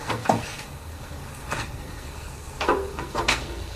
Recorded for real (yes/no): no